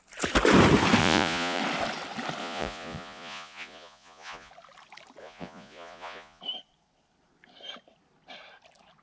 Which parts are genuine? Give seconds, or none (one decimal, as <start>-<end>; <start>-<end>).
0.0-1.0; 1.6-2.4; 4.5-5.2; 6.4-9.0